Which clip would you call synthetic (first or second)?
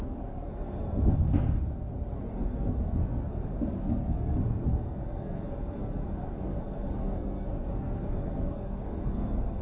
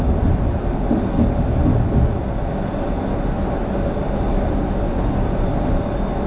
first